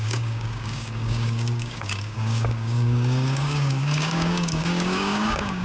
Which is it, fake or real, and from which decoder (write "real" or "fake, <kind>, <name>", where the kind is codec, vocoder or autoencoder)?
fake, codec, DAC